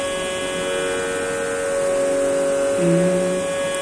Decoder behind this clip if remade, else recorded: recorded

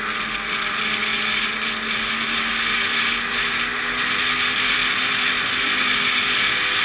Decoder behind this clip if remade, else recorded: recorded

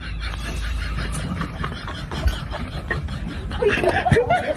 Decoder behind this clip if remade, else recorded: recorded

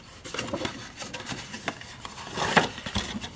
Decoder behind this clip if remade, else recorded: recorded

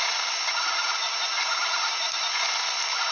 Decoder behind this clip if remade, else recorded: recorded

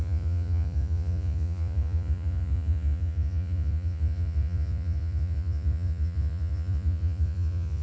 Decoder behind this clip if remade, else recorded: remade, vocoder, Vocos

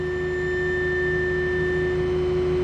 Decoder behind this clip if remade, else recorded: recorded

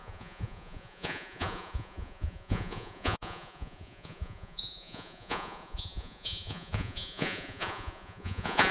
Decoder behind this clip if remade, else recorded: remade, vocoder, Vocos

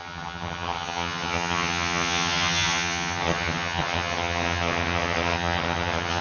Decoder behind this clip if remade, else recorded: remade, vocoder, HiFi-GAN